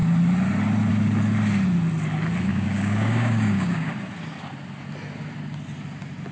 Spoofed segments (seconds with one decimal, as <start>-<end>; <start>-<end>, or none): 2.5-3.9